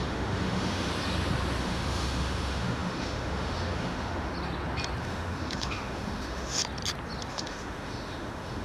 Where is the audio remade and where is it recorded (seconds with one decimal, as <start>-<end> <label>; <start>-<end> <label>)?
0.0-0.9 remade; 0.9-1.6 recorded; 1.6-4.3 remade; 4.3-5.0 recorded; 5.0-6.6 remade; 6.6-7.3 recorded; 7.3-8.6 remade